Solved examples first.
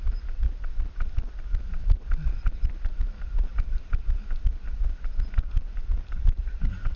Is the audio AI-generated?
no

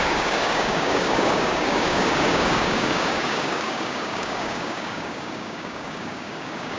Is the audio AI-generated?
yes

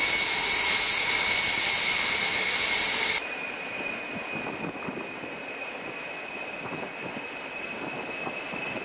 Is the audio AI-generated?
no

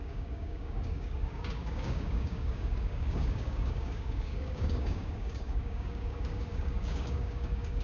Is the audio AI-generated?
yes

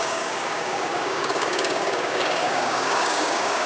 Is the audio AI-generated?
yes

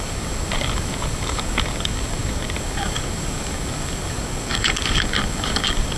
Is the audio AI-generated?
yes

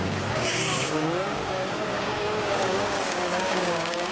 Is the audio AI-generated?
yes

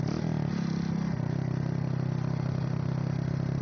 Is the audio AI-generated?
no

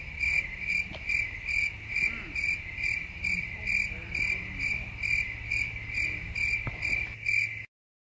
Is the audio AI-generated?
no